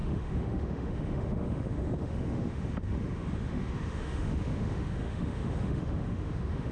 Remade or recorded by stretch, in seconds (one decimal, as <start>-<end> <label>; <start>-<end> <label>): 0.0-6.7 remade